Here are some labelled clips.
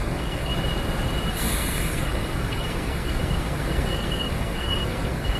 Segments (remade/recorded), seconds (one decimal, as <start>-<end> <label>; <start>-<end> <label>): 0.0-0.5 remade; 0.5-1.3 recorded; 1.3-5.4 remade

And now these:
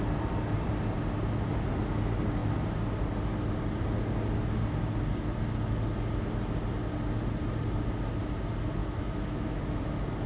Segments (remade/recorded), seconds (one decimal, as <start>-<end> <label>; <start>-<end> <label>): 0.0-8.8 recorded; 8.8-9.6 remade; 9.6-10.3 recorded

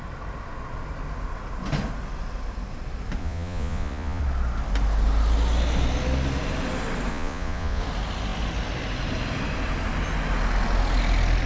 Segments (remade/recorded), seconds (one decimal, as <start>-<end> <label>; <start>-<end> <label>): 0.0-3.2 recorded; 3.2-4.2 remade; 4.2-7.1 recorded; 7.1-7.8 remade; 7.8-11.5 recorded

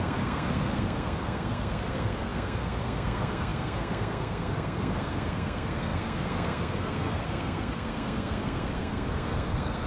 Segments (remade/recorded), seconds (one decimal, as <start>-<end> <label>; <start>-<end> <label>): 0.0-9.9 remade

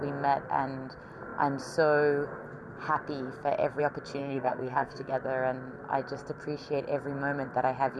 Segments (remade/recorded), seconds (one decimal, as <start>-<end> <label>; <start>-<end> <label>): 0.0-4.2 recorded; 4.2-5.1 remade; 5.1-8.0 recorded

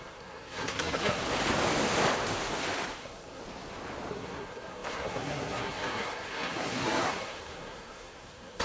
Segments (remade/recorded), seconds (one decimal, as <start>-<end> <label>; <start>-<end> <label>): 0.0-1.2 remade; 1.2-3.0 recorded; 3.0-3.4 remade; 3.4-4.1 recorded; 4.1-8.6 remade

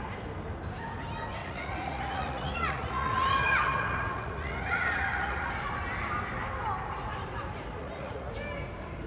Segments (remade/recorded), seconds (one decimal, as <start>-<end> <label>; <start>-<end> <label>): 0.0-1.4 recorded; 1.4-5.5 remade; 5.5-7.8 recorded; 7.8-8.3 remade; 8.3-9.1 recorded

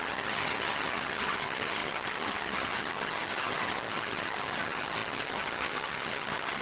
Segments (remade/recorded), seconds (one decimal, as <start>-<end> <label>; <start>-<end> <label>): 0.0-6.6 remade